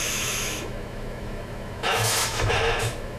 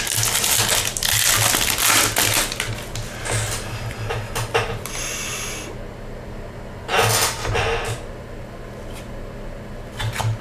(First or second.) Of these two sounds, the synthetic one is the first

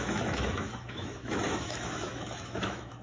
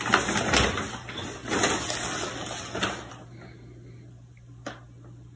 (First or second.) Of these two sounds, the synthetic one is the first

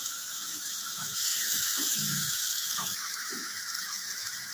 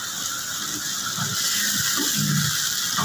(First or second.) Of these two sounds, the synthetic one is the first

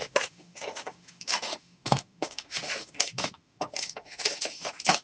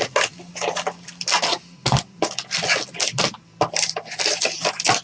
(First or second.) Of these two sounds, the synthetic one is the first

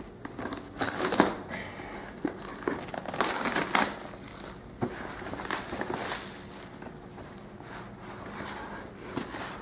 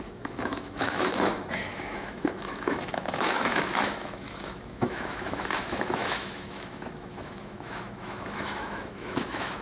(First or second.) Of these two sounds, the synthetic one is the second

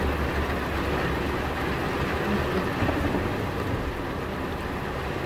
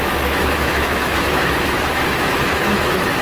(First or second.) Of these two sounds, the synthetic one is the second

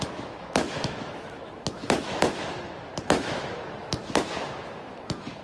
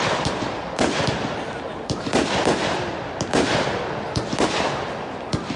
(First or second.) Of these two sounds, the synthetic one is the first